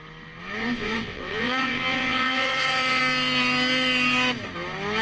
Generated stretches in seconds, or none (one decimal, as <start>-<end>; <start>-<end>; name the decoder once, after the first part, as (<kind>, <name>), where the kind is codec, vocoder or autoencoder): 0.6-3.0 (vocoder, WaveNeXt)

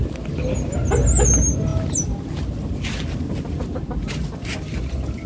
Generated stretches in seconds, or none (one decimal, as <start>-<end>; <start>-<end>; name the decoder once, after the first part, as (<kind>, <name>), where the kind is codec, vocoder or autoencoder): none

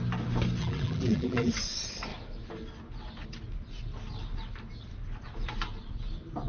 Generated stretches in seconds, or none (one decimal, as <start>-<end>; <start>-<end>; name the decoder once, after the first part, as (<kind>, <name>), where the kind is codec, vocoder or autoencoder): 0.6-1.5 (vocoder, BigVGAN v2)